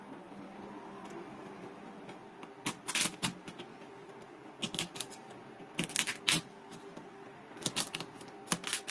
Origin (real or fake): real